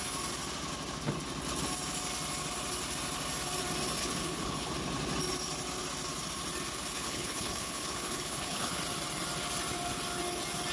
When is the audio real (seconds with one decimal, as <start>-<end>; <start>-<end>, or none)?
0.0-4.0; 4.7-6.9; 8.8-10.7